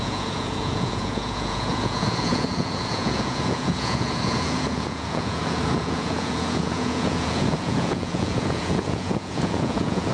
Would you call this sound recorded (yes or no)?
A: no